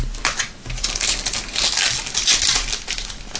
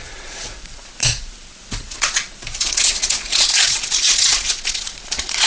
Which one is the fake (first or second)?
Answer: second